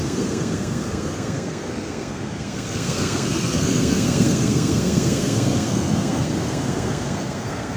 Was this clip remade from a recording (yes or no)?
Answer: yes